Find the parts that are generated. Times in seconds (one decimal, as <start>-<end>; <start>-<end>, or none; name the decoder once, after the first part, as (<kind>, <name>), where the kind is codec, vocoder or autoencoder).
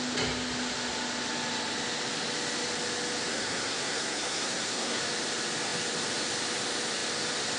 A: 3.3-5.0 (codec, SNAC)